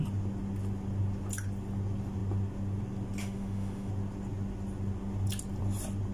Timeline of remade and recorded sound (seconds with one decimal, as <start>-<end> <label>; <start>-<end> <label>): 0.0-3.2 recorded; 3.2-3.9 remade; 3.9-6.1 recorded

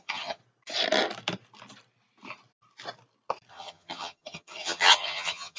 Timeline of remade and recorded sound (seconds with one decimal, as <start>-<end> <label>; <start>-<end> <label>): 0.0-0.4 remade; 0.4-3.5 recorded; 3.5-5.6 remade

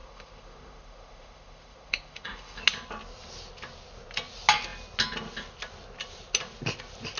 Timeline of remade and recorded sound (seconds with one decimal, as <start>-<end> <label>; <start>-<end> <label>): 0.0-2.6 remade; 2.6-7.2 recorded